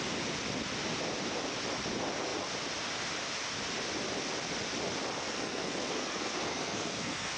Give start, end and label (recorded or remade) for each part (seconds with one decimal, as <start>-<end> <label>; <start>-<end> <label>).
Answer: 0.0-5.2 recorded; 5.2-7.4 remade